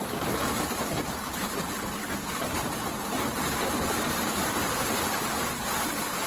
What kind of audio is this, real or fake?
fake